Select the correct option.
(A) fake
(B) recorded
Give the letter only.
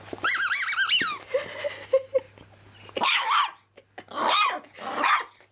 B